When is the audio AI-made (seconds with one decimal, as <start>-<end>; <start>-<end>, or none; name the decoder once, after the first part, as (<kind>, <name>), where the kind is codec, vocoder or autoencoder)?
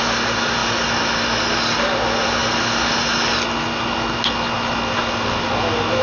none